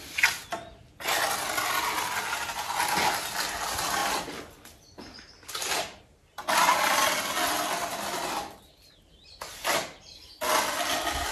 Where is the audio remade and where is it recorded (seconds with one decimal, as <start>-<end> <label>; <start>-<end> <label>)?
0.0-11.3 recorded